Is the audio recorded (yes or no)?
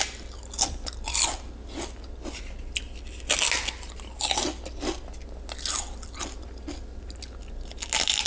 yes